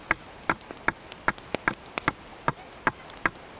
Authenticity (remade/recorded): recorded